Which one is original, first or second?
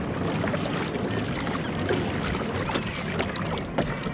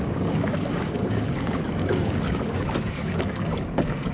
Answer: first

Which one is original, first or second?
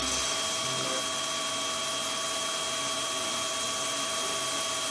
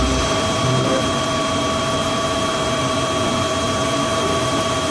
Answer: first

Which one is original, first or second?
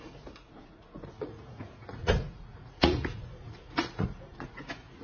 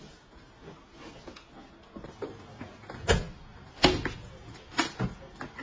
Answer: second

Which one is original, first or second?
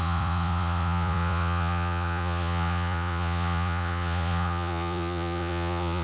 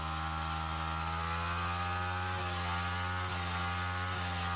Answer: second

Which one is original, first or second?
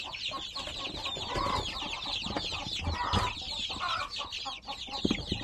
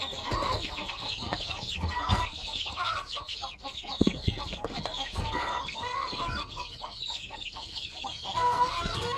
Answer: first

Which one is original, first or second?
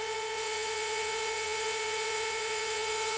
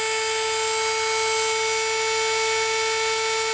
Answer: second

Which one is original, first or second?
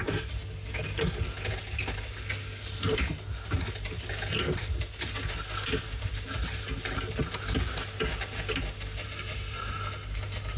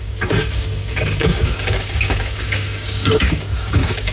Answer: first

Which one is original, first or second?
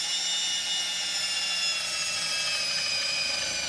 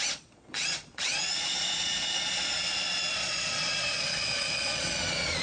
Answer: first